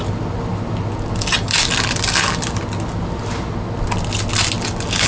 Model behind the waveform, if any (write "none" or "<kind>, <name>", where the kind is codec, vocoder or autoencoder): none